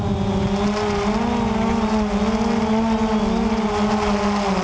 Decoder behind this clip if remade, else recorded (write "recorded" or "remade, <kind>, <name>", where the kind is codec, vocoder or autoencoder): recorded